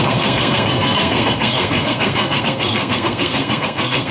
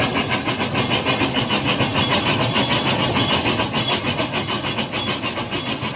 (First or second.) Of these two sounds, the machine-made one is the first